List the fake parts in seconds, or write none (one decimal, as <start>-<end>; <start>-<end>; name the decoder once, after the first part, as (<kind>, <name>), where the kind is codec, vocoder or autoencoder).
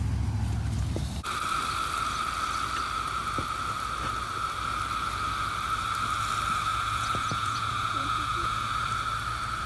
6.7-8.7 (vocoder, Vocos)